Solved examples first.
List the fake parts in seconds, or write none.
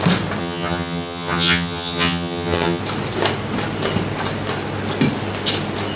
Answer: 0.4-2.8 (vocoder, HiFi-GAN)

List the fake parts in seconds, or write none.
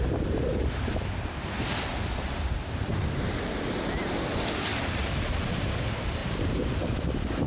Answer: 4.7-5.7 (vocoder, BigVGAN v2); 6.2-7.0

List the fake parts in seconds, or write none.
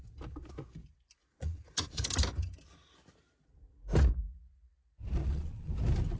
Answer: 1.2-2.0 (vocoder, Vocos); 5.2-5.7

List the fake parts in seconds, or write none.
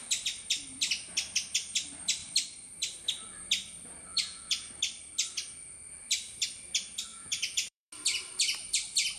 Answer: 4.1-4.7 (vocoder, Vocos); 7.1-7.9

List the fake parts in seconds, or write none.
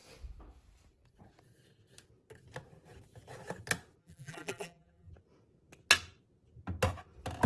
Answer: 4.0-5.1 (vocoder, BigVGAN v2)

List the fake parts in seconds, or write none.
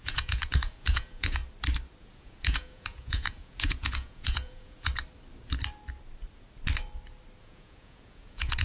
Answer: 0.0-1.4 (vocoder, Vocos); 2.0-4.9; 7.4-8.6